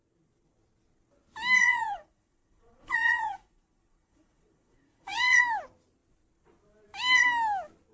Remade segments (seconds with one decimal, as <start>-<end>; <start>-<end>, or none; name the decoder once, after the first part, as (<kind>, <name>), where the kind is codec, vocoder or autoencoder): 1.6-5.4 (vocoder, Vocos)